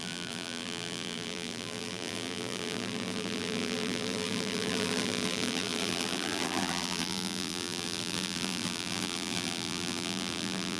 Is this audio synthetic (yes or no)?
yes